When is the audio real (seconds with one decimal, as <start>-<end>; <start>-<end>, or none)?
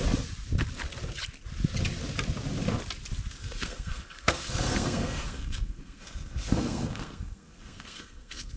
0.0-3.4